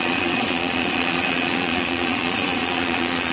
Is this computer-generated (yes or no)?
yes